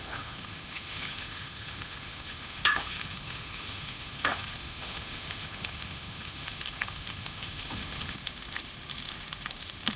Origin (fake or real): fake